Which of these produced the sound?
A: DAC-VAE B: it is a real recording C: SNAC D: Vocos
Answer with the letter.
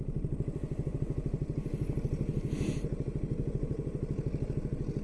B